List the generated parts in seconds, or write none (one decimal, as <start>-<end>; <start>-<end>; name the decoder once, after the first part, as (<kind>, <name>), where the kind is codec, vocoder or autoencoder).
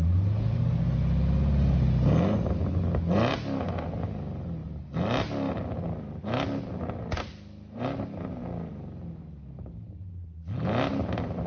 none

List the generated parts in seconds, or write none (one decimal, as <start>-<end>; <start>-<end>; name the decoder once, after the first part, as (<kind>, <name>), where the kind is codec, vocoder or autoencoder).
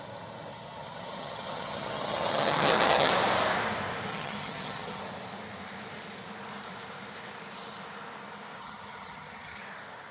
0.5-3.1 (vocoder, HiFi-GAN); 4.1-5.0; 8.6-9.6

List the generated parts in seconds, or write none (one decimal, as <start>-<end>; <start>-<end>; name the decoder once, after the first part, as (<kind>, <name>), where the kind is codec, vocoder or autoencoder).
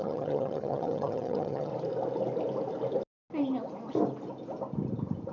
0.0-1.7 (vocoder, HiFi-GAN)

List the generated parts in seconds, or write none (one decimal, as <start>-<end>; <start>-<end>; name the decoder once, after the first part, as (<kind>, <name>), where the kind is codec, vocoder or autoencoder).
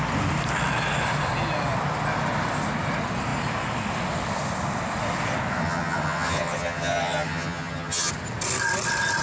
5.6-8.1 (vocoder, HiFi-GAN)